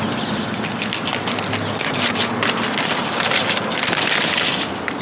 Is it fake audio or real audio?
real